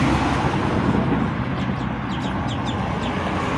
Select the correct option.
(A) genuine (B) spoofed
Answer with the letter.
A